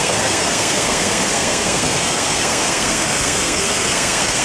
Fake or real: fake